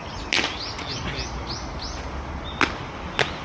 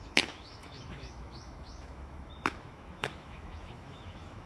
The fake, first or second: second